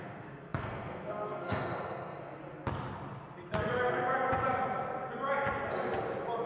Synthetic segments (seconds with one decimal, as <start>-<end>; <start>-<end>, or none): 0.0-2.4